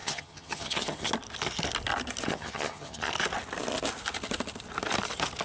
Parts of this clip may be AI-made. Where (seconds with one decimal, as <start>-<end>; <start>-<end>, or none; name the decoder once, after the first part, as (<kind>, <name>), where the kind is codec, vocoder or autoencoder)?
0.0-1.1 (vocoder, HiFi-GAN); 2.3-3.1